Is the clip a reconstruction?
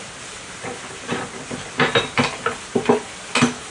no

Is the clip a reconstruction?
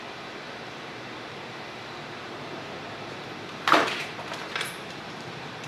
yes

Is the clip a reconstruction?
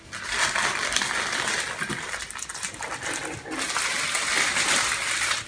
no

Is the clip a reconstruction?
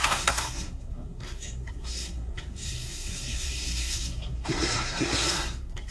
yes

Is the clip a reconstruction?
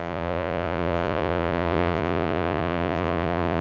yes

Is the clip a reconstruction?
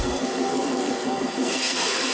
yes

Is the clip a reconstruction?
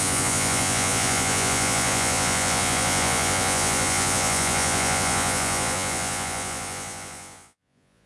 yes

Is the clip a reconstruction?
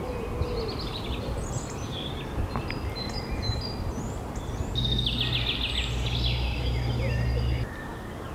no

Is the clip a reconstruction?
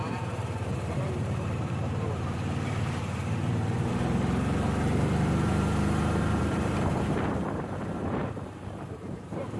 yes